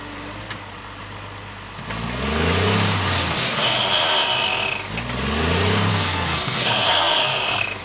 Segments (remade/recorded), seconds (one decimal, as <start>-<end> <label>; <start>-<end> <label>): 0.0-5.9 recorded; 5.9-7.8 remade